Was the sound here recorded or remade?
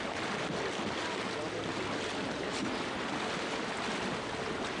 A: recorded